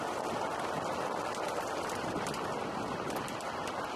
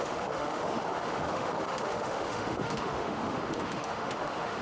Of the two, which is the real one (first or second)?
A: first